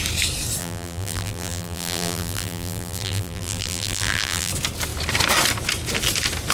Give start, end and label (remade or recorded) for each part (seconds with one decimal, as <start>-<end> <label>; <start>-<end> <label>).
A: 0.0-0.6 recorded; 0.6-4.5 remade; 4.5-6.5 recorded